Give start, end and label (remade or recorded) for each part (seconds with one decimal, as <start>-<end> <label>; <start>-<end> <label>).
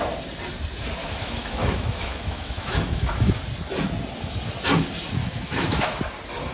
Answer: 0.0-1.0 recorded; 1.0-3.3 remade; 3.3-5.2 recorded; 5.2-6.0 remade; 6.0-6.5 recorded